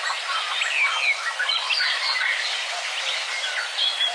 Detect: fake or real real